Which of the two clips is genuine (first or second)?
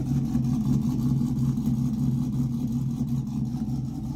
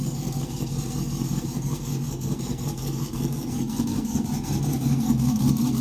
first